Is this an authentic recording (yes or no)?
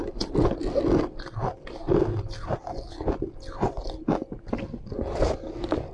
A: yes